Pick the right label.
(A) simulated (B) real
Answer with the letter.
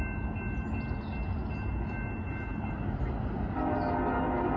B